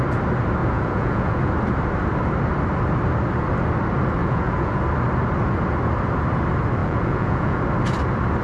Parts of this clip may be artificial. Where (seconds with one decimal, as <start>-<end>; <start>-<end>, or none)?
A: 0.6-1.5; 4.2-4.8; 6.8-7.6